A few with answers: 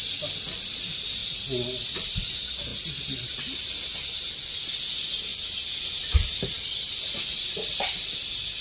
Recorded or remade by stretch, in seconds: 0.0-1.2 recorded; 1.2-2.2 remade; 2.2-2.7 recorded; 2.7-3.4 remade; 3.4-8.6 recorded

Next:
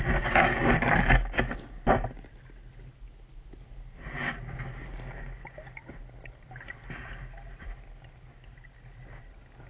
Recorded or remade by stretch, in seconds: 0.0-9.7 recorded

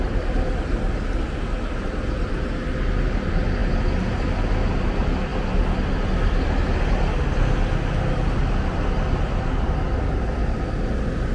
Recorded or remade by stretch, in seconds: 0.0-11.3 recorded

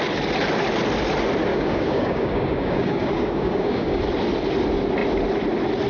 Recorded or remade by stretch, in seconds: 0.0-1.5 recorded; 1.5-4.0 remade; 4.0-5.9 recorded

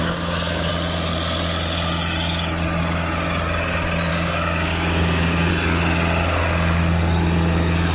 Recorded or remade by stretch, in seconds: 0.0-0.7 remade; 0.7-4.1 recorded; 4.1-5.5 remade; 5.5-7.9 recorded

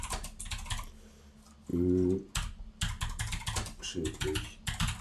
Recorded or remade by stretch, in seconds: 0.0-5.0 recorded

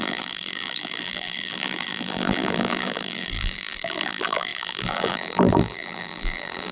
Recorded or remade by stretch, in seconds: 0.0-6.7 remade